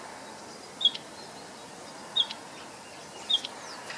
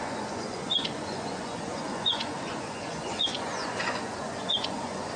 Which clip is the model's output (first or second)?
second